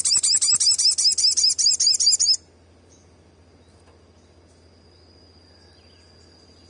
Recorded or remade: recorded